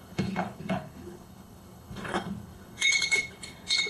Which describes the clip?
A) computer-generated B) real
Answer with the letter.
A